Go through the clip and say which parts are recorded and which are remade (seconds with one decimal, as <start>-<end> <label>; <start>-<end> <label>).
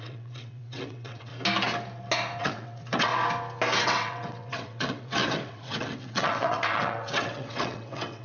0.0-1.3 remade; 1.3-2.4 recorded; 2.4-3.1 remade; 3.1-3.8 recorded; 3.8-8.2 remade